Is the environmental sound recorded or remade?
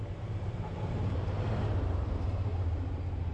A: remade